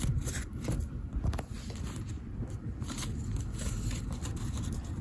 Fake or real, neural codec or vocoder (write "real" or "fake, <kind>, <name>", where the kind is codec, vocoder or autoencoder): fake, vocoder, BigVGAN v2